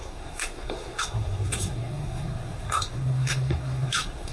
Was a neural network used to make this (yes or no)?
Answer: yes